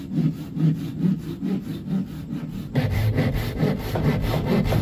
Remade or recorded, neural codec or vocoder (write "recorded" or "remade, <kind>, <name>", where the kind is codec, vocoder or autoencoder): recorded